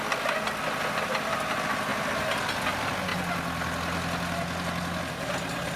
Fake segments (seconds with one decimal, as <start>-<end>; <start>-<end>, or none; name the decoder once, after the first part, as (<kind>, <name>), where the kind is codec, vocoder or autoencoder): none